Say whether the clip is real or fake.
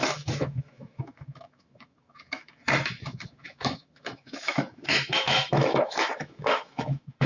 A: fake